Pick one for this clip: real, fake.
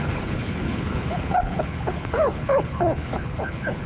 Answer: fake